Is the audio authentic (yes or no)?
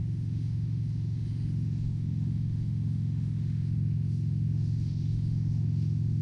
no